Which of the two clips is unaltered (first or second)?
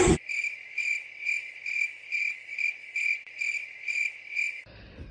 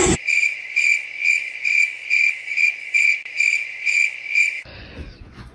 first